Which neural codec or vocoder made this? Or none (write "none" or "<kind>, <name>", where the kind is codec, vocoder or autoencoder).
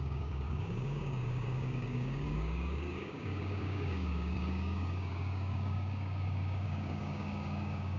codec, DAC